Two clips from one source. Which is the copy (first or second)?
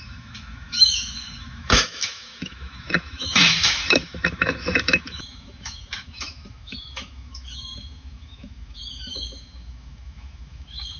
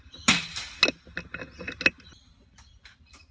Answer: first